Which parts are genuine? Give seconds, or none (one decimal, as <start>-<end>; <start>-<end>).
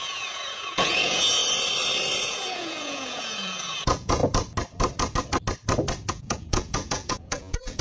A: 1.4-2.2; 4.2-6.1